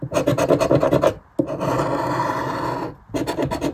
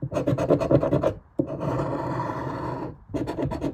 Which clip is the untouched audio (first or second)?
first